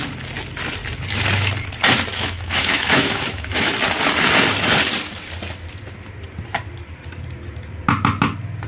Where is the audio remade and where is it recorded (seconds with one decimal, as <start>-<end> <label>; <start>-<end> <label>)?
0.0-2.1 recorded; 2.1-3.7 remade; 3.7-8.7 recorded